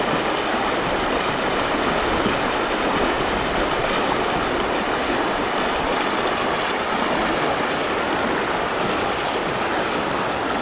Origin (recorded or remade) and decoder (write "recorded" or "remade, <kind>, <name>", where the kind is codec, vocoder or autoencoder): recorded